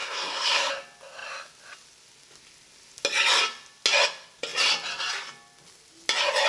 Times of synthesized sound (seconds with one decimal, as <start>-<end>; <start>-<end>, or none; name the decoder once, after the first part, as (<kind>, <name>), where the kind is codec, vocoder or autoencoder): 0.0-0.7 (codec, SNAC)